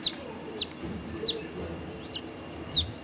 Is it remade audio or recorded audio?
recorded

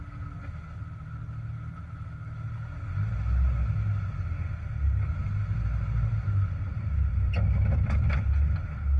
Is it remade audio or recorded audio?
recorded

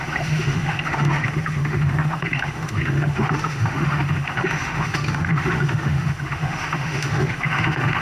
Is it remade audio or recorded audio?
remade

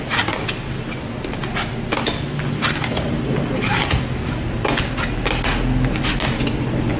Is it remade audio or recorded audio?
recorded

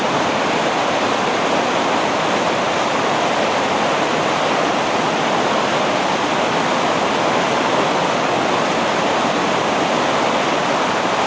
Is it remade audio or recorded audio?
recorded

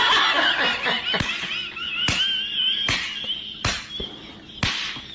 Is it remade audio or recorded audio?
recorded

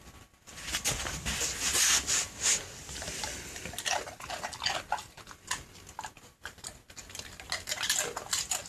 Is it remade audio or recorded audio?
recorded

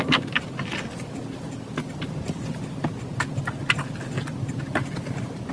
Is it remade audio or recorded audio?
recorded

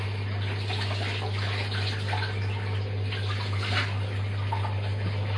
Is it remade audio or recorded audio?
recorded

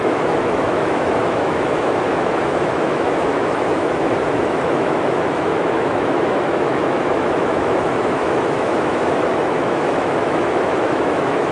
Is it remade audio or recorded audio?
remade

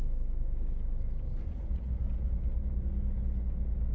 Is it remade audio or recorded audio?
recorded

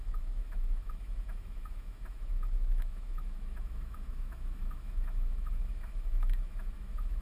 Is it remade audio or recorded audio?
remade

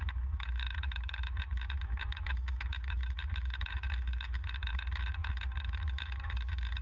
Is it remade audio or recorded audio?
remade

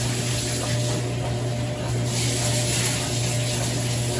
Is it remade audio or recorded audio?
recorded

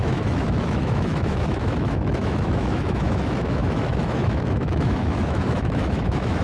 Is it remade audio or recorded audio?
remade